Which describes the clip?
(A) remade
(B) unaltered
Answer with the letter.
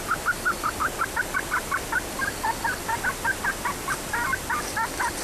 B